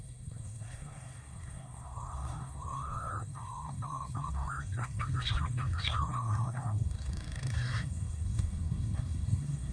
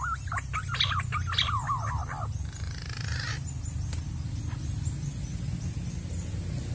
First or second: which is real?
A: second